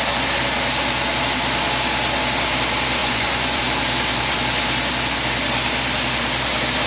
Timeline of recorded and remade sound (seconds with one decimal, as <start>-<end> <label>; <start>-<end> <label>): 0.0-3.0 recorded; 3.0-3.6 remade; 3.6-6.9 recorded